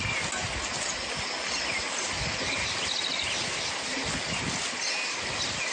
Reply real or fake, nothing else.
real